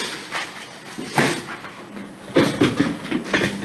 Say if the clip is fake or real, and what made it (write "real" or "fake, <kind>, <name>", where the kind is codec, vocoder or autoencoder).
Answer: real